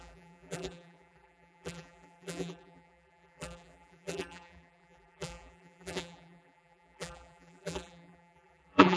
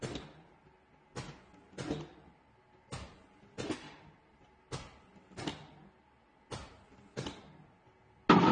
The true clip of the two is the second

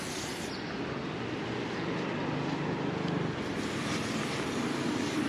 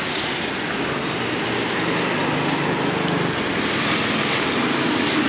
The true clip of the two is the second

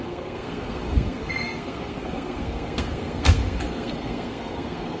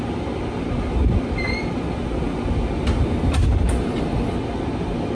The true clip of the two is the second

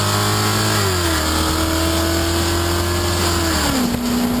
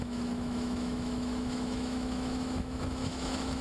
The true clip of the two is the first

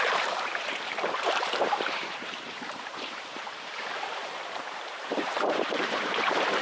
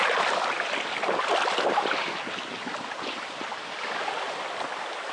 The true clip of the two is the second